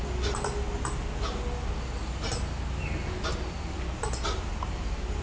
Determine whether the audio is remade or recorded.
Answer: recorded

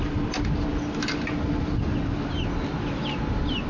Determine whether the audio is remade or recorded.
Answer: recorded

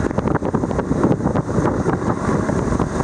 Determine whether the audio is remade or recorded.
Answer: remade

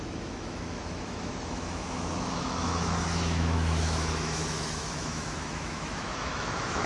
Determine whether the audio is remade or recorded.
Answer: remade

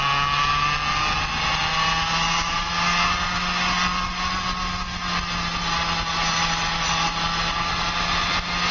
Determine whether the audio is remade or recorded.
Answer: recorded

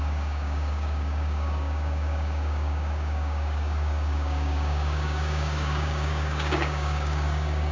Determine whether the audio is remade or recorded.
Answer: remade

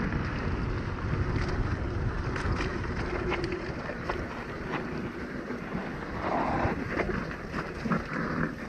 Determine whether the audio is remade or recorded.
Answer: recorded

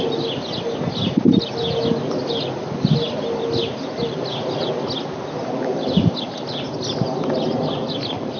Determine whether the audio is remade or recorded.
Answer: recorded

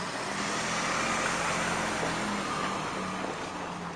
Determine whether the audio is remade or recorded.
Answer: recorded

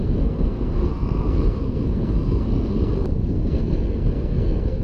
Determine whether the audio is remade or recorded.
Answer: remade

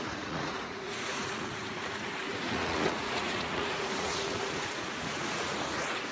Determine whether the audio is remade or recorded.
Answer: remade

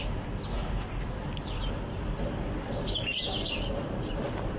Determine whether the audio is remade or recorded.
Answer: recorded